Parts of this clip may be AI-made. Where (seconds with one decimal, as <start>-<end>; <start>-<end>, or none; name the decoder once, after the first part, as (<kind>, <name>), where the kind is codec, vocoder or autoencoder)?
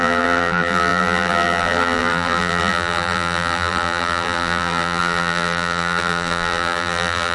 0.0-7.3 (vocoder, BigVGAN v2)